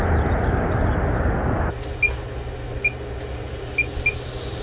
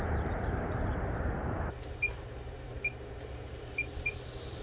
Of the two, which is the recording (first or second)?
first